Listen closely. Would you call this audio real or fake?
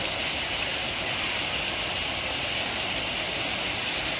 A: real